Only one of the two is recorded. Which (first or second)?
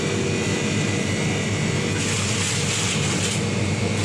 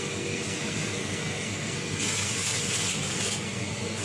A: first